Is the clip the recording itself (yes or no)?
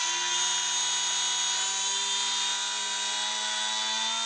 yes